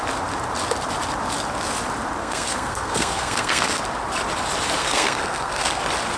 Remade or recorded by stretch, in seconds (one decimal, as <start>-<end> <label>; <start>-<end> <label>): 0.0-2.2 recorded; 2.2-3.8 remade; 3.8-4.8 recorded; 4.8-5.8 remade; 5.8-6.2 recorded